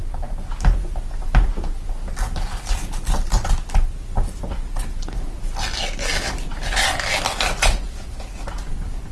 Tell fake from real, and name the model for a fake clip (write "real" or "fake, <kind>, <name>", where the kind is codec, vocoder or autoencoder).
real